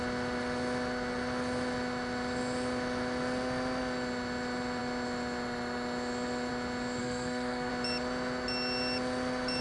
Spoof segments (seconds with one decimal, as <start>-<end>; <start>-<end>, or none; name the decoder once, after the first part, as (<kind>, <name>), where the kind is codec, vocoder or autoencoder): 7.0-7.7 (codec, SNAC)